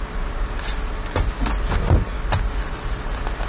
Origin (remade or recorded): recorded